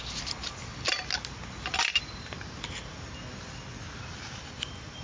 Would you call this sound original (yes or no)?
yes